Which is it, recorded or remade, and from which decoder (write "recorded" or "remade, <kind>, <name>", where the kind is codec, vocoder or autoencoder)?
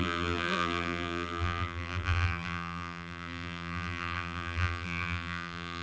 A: remade, vocoder, BigVGAN v2